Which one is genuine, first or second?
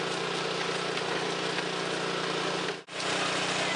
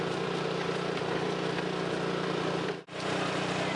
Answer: first